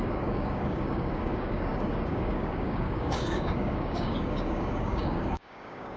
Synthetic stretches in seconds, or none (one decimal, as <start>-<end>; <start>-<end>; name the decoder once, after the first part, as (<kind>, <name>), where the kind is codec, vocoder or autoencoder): 0.0-6.0 (codec, DAC)